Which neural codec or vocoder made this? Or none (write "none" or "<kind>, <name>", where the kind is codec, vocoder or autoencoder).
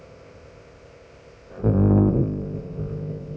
codec, ZipCodec